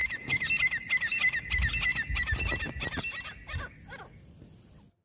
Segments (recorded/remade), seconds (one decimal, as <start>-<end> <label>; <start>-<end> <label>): 0.0-5.0 recorded